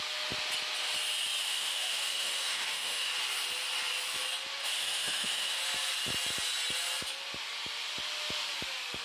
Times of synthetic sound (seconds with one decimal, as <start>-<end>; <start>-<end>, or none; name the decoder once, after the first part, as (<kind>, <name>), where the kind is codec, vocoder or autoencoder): 1.4-3.1 (autoencoder, DAC-VAE); 4.6-5.6